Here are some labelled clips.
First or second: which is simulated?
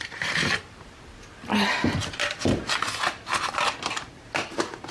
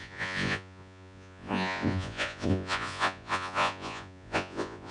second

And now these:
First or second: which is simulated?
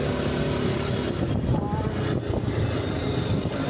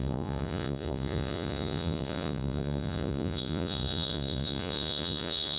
second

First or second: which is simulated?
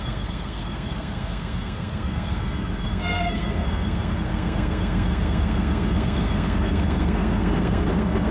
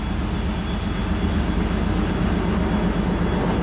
first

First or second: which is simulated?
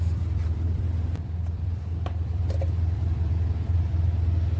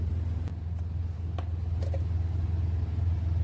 first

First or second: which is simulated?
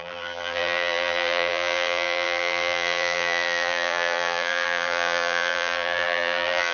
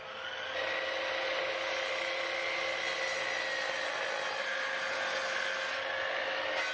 first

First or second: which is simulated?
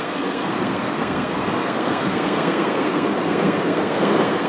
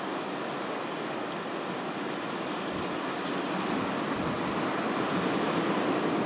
first